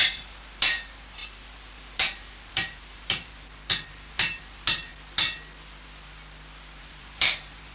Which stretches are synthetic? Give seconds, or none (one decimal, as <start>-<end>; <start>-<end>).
0.0-4.9; 6.8-7.7